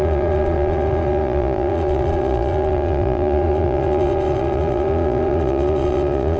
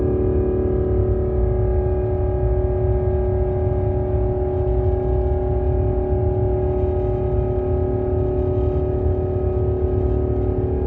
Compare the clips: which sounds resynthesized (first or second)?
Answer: first